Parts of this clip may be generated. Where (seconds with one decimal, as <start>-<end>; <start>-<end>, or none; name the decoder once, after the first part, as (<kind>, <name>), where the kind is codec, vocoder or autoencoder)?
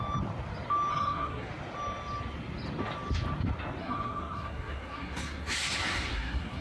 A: 0.9-1.5 (codec, SNAC); 3.8-6.6